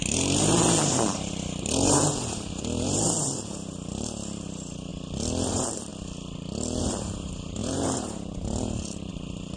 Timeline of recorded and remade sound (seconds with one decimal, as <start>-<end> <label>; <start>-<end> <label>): 0.0-4.9 remade; 4.9-5.5 recorded; 5.5-5.9 remade; 5.9-6.8 recorded; 6.8-9.6 remade